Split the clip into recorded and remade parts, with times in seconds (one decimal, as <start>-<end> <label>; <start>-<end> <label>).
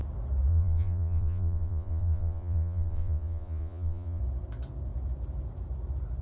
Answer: 0.0-0.5 recorded; 0.5-4.2 remade; 4.2-6.2 recorded